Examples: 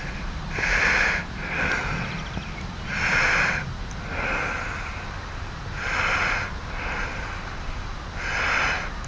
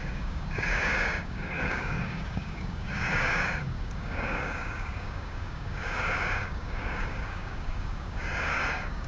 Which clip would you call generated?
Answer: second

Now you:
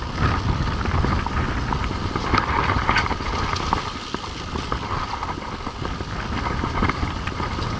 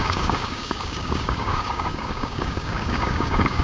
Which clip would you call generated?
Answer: second